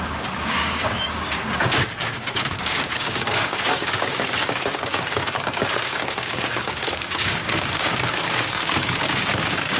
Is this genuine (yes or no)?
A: no